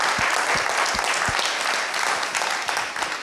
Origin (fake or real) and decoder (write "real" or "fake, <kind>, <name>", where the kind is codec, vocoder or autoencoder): real